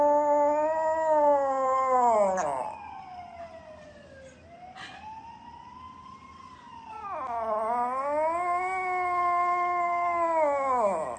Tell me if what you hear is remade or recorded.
recorded